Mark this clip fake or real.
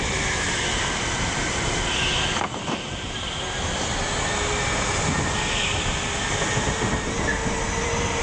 real